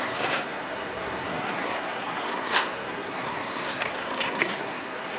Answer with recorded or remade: remade